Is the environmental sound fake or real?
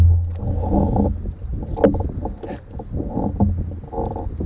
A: real